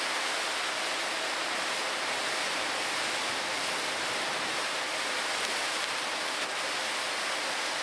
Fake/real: real